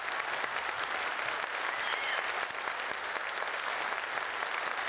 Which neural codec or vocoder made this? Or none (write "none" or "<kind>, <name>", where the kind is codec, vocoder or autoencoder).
none